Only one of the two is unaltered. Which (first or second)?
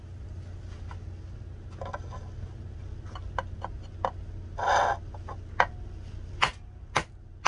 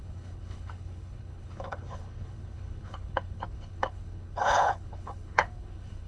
first